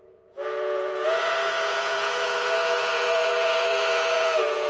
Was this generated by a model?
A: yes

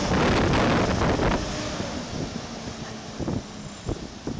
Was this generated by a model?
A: no